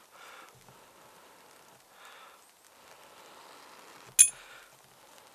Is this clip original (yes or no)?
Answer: yes